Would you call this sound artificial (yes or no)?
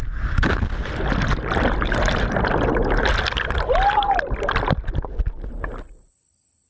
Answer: no